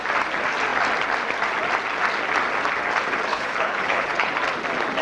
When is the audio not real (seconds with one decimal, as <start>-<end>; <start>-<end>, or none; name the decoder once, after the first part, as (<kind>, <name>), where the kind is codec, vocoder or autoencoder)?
3.3-4.3 (codec, HILCodec)